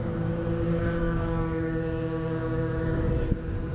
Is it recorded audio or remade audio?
remade